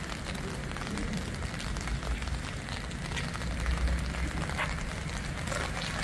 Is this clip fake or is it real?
real